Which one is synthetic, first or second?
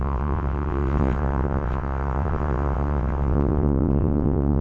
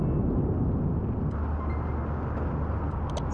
first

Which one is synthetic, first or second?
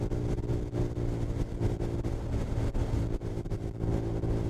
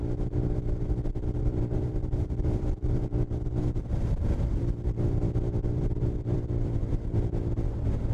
second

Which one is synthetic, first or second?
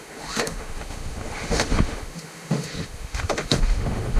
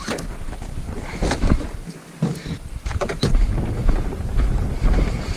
first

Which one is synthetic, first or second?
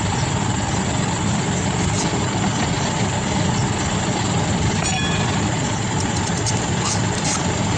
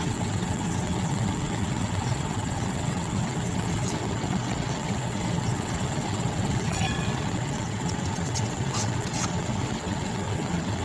second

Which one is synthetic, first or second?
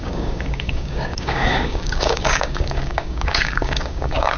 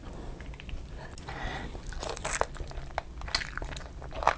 first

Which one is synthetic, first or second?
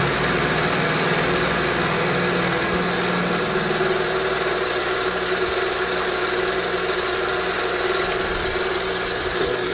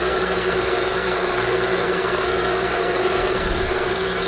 second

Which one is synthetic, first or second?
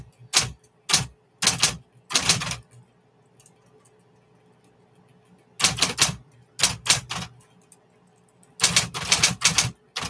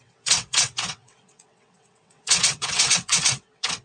second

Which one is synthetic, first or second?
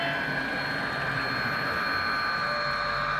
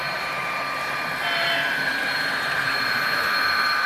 second